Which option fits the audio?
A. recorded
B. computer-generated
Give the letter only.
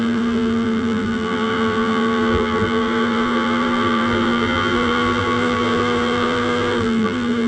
B